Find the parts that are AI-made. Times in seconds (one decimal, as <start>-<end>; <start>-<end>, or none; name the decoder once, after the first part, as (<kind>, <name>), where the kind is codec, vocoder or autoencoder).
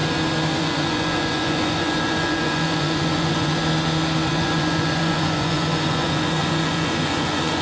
0.6-3.6 (vocoder, Vocos); 4.3-7.6